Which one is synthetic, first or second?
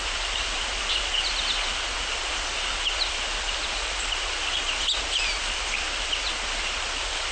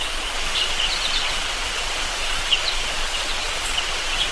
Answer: second